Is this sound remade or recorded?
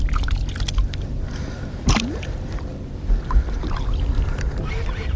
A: recorded